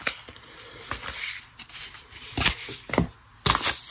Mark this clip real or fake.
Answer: real